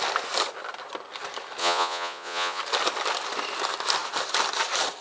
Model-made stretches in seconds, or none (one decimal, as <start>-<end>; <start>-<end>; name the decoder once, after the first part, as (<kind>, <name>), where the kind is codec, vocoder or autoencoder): 1.6-2.6 (vocoder, Vocos)